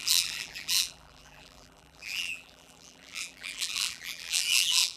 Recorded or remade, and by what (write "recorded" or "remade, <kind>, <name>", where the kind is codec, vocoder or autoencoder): remade, vocoder, BigVGAN v2